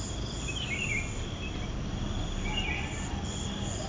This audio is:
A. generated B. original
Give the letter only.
B